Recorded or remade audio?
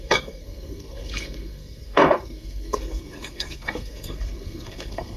remade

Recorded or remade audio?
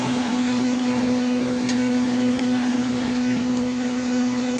remade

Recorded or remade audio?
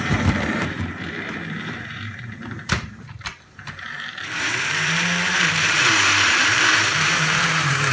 remade